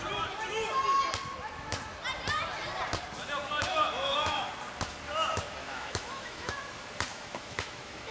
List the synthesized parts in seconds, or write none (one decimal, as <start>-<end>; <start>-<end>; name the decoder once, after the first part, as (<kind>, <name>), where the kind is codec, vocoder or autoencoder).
3.7-4.5 (autoencoder, DAC-VAE); 5.6-6.5; 7.1-8.1